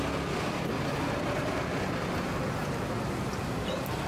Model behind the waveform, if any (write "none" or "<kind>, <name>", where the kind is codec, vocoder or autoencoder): none